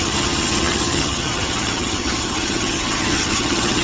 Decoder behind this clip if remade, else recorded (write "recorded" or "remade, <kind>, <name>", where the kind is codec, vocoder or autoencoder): remade, vocoder, HiFi-GAN